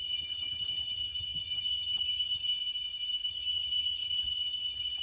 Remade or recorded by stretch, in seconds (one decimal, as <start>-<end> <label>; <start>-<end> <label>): 0.0-2.5 remade; 2.5-3.3 recorded; 3.3-5.0 remade